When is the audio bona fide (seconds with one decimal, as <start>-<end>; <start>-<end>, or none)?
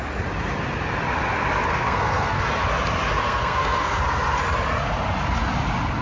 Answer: 0.0-1.7; 2.4-3.2; 4.0-6.0